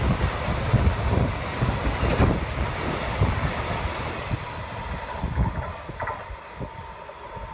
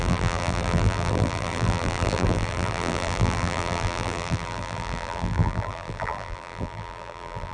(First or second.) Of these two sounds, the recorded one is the first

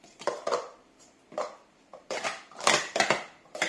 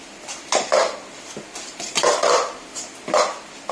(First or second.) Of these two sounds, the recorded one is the second